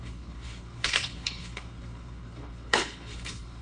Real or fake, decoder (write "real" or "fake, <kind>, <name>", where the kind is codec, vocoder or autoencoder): fake, codec, HILCodec